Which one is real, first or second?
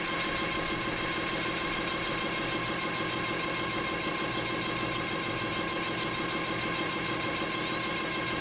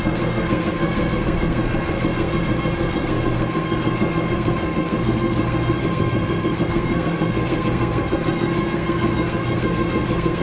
first